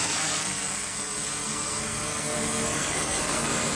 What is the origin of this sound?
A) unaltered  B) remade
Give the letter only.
B